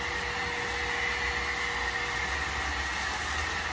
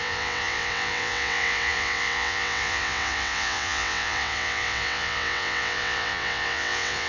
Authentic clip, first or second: first